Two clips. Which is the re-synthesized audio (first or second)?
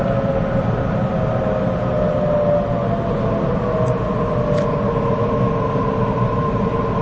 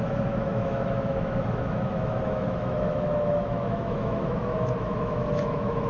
second